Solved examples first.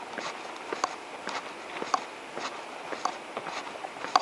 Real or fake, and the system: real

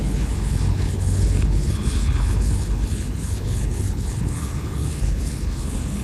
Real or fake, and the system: fake, codec, HILCodec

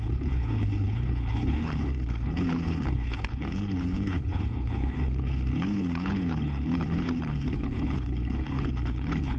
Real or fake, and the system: fake, codec, HILCodec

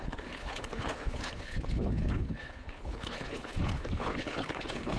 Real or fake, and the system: fake, codec, HILCodec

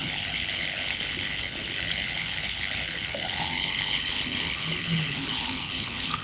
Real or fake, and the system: fake, codec, HILCodec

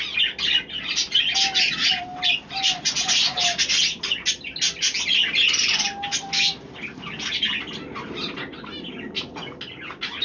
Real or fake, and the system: real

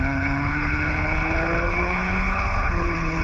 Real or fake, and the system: fake, codec, HILCodec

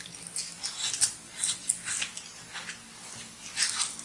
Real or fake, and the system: real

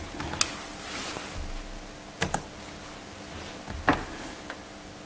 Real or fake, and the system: real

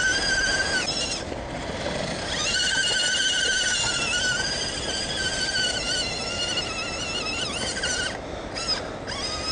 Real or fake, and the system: real